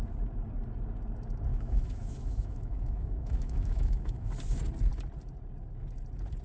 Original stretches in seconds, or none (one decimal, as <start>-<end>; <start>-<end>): 0.0-1.5; 4.3-6.4